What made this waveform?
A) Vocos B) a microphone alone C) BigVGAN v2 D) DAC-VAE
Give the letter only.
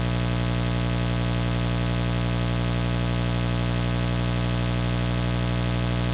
B